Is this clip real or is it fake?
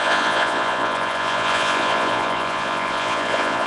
fake